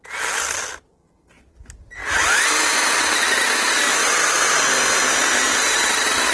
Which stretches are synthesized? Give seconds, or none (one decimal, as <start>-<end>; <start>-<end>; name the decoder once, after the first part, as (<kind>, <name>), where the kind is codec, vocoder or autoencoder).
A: 4.0-4.7 (vocoder, WaveNeXt)